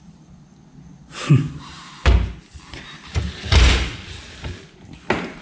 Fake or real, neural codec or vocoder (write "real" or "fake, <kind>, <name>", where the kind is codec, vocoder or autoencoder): real